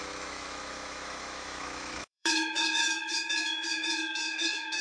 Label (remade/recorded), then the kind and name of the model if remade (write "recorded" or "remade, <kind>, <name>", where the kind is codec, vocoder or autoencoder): remade, autoencoder, DAC-VAE